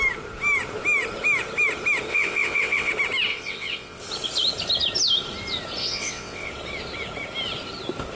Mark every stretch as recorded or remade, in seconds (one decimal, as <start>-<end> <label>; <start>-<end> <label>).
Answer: 0.0-2.1 recorded; 2.1-2.9 remade; 2.9-3.3 recorded; 3.3-4.0 remade; 4.0-5.8 recorded; 5.8-6.5 remade; 6.5-8.1 recorded